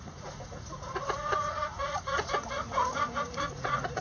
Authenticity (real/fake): fake